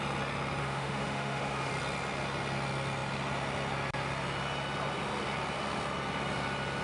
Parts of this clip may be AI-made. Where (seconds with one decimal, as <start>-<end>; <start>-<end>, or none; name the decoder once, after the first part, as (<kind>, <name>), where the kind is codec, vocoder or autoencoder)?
0.6-1.7 (autoencoder, DAC-VAE)